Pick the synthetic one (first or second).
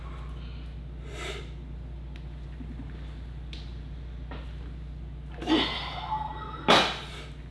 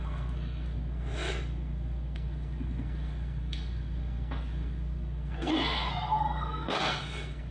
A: second